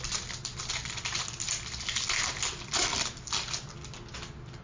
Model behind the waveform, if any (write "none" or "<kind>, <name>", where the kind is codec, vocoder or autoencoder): none